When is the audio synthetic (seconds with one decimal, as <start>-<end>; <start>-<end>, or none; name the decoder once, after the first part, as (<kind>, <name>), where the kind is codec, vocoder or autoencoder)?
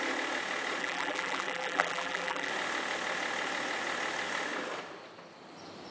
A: 0.8-2.5 (vocoder, BigVGAN v2)